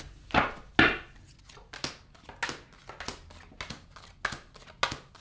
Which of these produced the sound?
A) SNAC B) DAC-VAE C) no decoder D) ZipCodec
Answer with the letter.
C